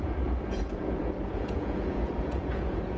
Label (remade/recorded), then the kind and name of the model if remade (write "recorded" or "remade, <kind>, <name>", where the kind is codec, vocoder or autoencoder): remade, vocoder, Vocos